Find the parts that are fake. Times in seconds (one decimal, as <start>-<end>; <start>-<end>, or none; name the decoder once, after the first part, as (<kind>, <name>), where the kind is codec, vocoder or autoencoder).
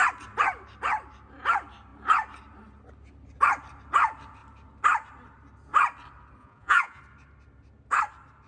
6.4-7.0 (vocoder, Vocos)